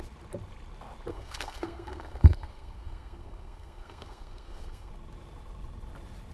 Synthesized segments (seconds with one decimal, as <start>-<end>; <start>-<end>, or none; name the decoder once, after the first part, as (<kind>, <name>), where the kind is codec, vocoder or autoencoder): 1.1-4.9 (codec, SNAC)